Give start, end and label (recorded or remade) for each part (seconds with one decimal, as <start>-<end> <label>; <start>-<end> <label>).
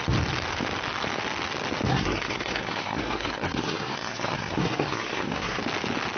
0.0-1.9 recorded; 1.9-5.6 remade; 5.6-6.2 recorded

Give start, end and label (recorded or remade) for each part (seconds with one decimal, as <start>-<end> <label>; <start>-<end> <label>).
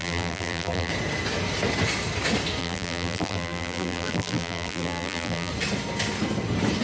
0.0-0.9 remade; 0.9-2.6 recorded; 2.6-5.5 remade; 5.5-6.8 recorded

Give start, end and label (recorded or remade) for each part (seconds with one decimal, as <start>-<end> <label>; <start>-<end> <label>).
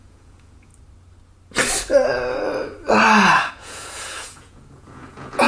0.0-0.7 remade; 0.7-3.5 recorded; 3.5-5.5 remade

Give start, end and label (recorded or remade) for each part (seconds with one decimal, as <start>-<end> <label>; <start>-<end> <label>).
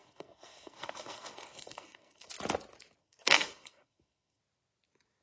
0.0-2.3 remade; 2.3-3.0 recorded; 3.0-4.4 remade; 4.4-5.2 recorded